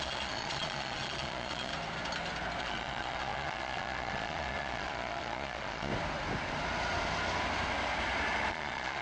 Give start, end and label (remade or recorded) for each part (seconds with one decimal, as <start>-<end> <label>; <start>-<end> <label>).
0.0-1.7 remade; 1.7-2.6 recorded; 2.6-5.9 remade; 5.9-8.5 recorded; 8.5-9.0 remade